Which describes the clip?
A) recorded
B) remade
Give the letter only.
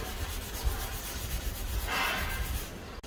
A